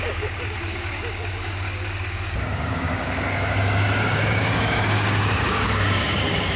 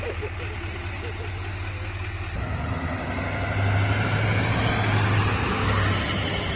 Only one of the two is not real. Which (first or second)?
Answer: first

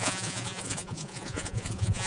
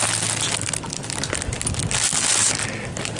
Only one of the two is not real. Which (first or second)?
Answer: first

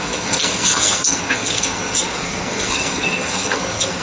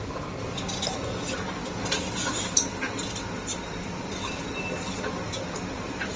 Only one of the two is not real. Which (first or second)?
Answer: first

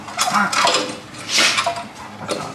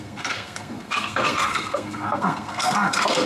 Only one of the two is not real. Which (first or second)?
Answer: second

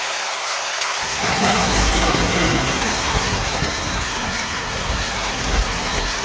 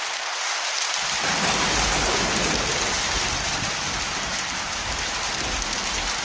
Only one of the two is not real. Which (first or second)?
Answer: first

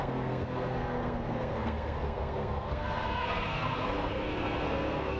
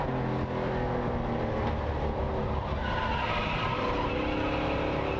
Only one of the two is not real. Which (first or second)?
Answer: first